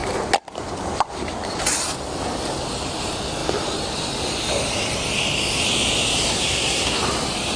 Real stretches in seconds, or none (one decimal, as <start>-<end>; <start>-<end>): 0.0-6.3; 7.0-7.6